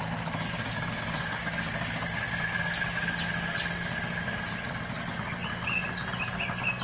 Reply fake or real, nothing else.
real